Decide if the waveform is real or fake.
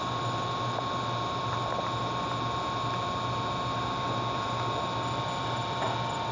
real